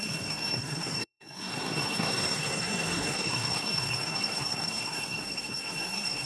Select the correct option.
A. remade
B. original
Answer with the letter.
A